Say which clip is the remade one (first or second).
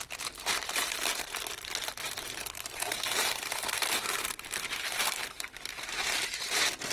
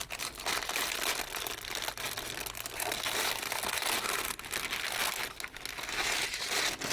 first